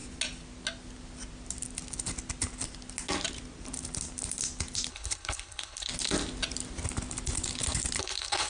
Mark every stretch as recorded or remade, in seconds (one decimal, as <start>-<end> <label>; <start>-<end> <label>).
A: 0.0-4.9 recorded; 4.9-5.9 remade; 5.9-8.0 recorded; 8.0-8.5 remade